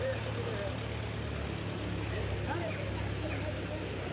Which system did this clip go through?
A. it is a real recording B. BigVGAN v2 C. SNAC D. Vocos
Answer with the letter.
A